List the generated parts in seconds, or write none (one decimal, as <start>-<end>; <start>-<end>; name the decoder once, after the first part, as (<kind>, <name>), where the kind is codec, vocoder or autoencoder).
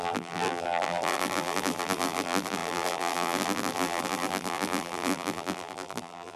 0.0-6.4 (vocoder, BigVGAN v2)